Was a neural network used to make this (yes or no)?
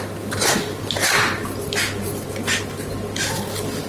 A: no